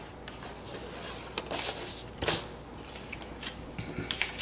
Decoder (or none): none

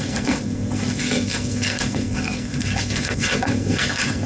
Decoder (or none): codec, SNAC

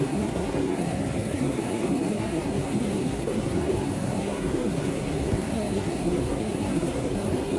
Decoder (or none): codec, SNAC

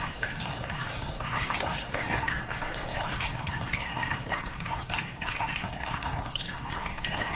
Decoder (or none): codec, SNAC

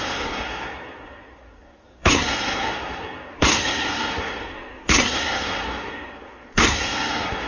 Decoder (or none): codec, SNAC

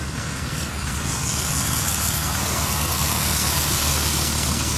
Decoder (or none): codec, SNAC